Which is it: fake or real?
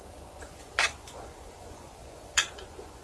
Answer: fake